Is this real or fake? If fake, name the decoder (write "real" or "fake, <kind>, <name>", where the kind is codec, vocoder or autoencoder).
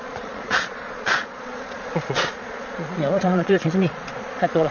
fake, vocoder, Vocos